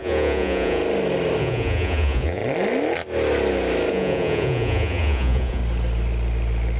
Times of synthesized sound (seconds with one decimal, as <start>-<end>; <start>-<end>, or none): 0.0-0.8; 1.4-2.4; 3.9-5.6